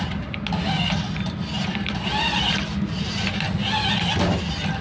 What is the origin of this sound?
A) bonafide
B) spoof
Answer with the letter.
A